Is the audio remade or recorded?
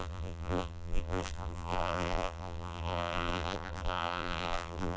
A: remade